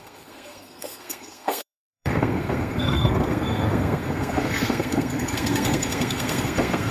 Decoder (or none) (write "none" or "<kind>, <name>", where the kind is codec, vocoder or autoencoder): codec, SNAC